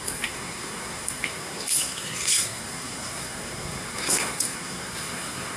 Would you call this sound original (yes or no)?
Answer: no